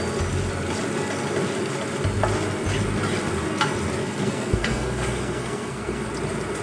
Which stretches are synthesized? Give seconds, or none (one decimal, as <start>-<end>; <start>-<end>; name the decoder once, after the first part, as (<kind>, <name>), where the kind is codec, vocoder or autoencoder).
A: 4.0-6.1 (codec, SNAC)